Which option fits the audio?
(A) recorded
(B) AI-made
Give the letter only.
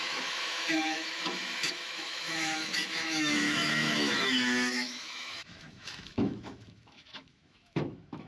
B